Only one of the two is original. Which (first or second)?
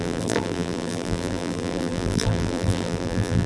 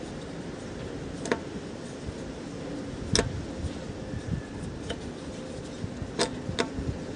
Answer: second